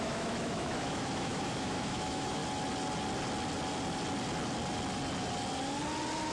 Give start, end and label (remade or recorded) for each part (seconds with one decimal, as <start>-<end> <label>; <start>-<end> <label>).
0.0-2.4 remade; 2.4-6.3 recorded